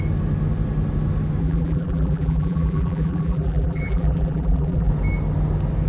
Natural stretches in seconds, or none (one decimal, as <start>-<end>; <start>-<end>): 0.0-1.4; 4.9-5.9